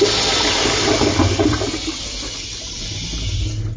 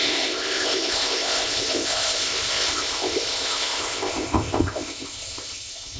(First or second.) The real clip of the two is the first